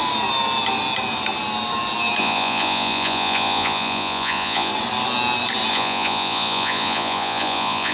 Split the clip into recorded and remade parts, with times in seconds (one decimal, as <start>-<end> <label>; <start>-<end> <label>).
0.0-2.2 recorded; 2.2-4.7 remade; 4.7-5.7 recorded; 5.7-7.9 remade